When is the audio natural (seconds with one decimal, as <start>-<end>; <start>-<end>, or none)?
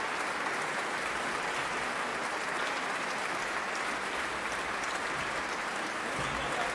0.0-6.7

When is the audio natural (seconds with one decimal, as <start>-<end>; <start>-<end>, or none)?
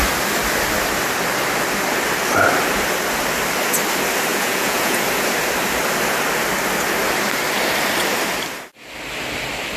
0.0-4.3; 5.0-9.8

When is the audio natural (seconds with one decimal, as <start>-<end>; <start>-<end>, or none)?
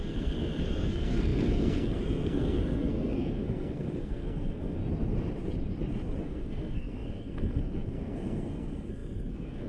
4.8-6.2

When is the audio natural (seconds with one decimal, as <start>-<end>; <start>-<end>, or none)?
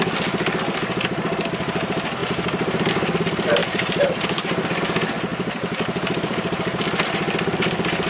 0.0-2.2; 2.9-3.6; 4.8-5.3; 6.8-8.1